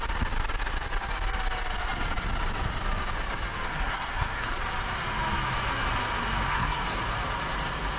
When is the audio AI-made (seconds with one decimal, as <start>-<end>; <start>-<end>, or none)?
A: 3.7-4.6; 6.5-7.0